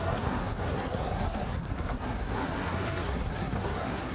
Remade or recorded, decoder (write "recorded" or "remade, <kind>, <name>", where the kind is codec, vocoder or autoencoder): remade, codec, SNAC